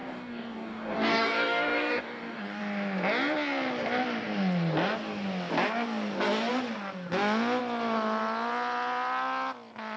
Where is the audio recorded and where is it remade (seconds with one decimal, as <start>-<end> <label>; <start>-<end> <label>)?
0.0-2.6 remade; 2.6-10.0 recorded